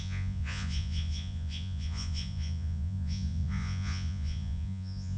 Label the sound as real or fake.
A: fake